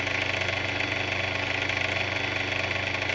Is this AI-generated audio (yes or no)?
no